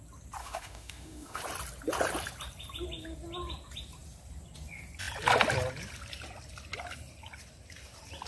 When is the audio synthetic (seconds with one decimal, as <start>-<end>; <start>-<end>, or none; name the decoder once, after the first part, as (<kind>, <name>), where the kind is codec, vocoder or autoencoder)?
0.4-1.4 (autoencoder, DAC-VAE)